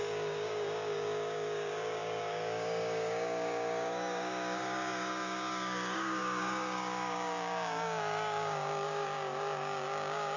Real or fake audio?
fake